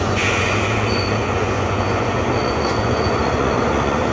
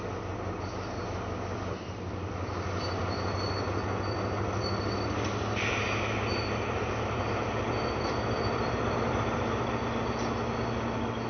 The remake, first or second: first